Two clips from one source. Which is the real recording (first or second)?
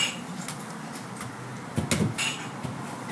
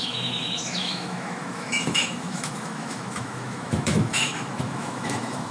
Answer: first